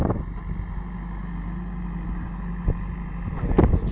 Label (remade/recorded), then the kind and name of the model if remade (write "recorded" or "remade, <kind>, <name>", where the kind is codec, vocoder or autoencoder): recorded